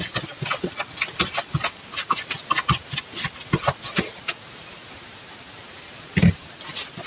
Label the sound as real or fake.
real